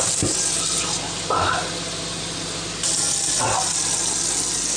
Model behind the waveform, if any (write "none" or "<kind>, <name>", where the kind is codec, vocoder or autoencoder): none